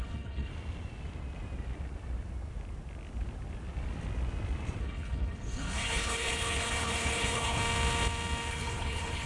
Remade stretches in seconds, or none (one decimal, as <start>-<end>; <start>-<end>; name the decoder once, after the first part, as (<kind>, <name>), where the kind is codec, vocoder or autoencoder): 0.0-0.5 (codec, HILCodec); 4.8-7.6; 8.5-9.3